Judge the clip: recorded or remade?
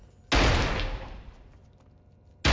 recorded